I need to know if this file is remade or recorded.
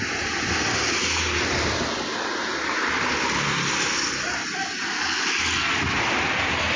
recorded